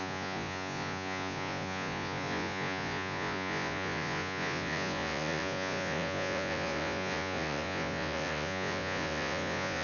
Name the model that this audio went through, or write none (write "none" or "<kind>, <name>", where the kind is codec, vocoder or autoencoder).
vocoder, Vocos